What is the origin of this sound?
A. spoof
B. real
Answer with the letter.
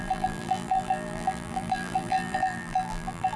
A